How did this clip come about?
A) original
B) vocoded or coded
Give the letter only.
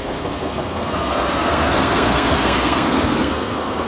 B